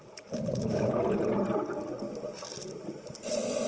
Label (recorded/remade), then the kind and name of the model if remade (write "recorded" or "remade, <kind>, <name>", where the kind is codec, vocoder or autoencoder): recorded